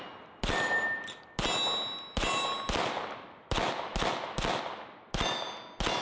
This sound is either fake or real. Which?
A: real